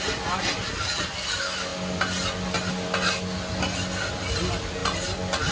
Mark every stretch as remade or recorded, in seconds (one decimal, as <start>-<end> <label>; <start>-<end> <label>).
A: 0.0-5.5 recorded

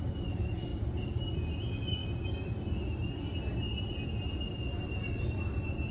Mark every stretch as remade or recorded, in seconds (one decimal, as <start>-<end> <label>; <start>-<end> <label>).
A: 0.0-5.9 recorded

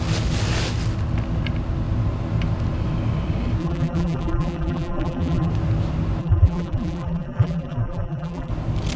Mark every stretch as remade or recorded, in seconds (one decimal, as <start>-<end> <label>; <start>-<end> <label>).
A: 0.0-3.6 recorded; 3.6-5.5 remade; 5.5-6.2 recorded; 6.2-8.5 remade; 8.5-9.0 recorded

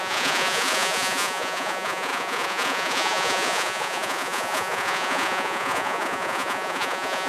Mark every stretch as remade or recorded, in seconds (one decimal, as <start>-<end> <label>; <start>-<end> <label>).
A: 0.0-7.3 remade

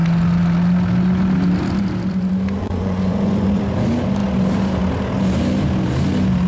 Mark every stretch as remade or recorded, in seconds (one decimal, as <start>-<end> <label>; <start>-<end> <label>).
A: 0.0-2.6 recorded; 2.6-3.6 remade; 3.6-6.5 recorded